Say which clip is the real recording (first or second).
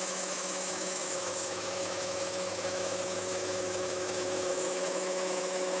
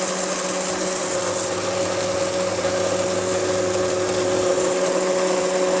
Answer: second